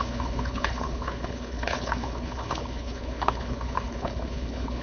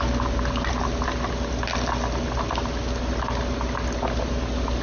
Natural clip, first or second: second